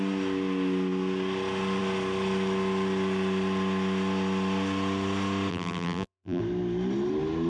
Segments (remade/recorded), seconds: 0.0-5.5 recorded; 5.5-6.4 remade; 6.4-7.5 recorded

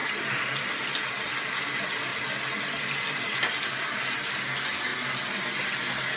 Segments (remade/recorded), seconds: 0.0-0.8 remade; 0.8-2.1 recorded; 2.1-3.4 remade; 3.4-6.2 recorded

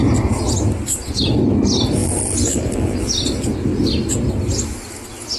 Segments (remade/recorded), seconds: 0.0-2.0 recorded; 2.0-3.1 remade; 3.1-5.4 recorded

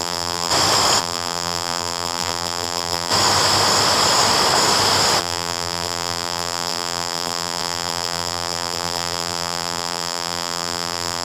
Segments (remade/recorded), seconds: 0.0-0.5 remade; 0.5-1.0 recorded; 1.0-3.1 remade; 3.1-5.2 recorded; 5.2-11.2 remade

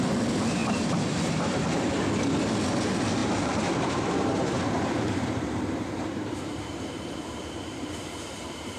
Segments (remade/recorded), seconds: 0.0-0.6 recorded; 0.6-2.0 remade; 2.0-3.2 recorded; 3.2-8.8 remade

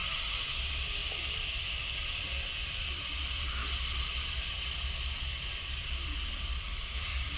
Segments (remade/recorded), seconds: 0.0-0.6 recorded; 0.6-7.4 remade

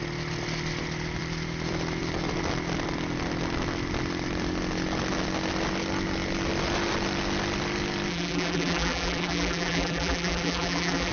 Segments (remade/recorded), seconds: 0.0-8.1 recorded; 8.1-11.1 remade

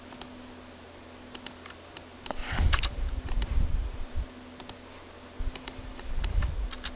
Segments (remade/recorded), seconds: 0.0-2.4 recorded; 2.4-4.3 remade; 4.3-5.4 recorded; 5.4-6.5 remade; 6.5-7.0 recorded